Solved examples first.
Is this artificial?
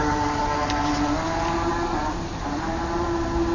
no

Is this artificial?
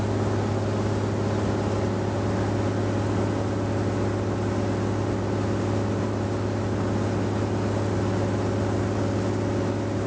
no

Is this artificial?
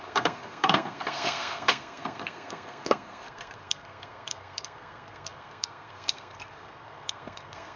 yes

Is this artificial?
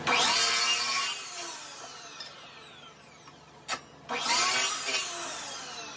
no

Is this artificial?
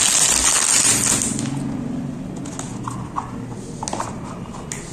no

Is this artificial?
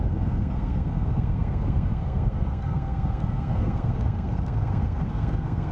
yes